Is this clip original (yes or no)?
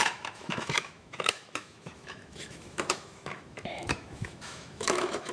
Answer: no